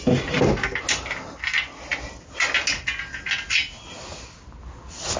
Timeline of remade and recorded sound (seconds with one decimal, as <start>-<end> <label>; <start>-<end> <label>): 0.0-5.2 recorded